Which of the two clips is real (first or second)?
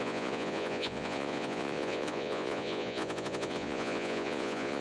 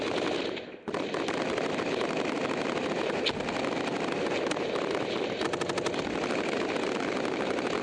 second